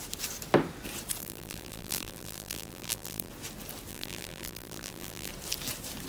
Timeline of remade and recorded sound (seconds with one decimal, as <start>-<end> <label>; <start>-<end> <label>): 0.0-1.2 recorded; 1.2-3.3 remade; 3.3-3.9 recorded; 3.9-5.3 remade; 5.3-6.1 recorded